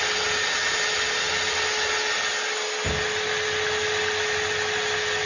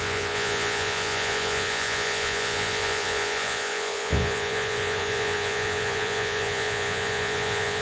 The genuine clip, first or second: first